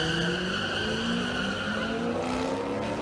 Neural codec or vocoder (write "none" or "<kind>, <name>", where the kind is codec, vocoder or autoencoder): none